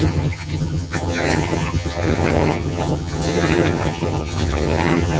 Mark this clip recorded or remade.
remade